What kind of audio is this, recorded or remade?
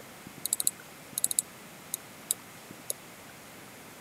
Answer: recorded